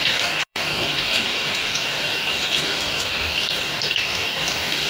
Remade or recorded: remade